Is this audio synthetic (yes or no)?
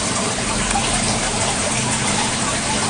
yes